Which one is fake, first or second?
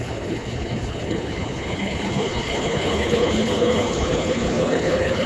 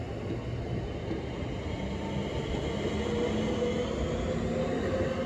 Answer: first